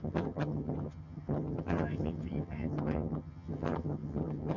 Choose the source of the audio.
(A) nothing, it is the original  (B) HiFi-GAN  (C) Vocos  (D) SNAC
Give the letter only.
B